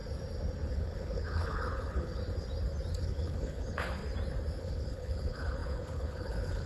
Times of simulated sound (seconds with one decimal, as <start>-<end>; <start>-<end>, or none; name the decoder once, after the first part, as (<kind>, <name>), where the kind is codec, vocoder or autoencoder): 0.7-2.2 (codec, HILCodec); 3.0-4.0; 4.6-6.7